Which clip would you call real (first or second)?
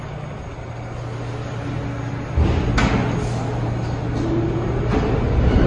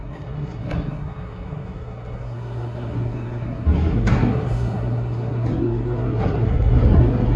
first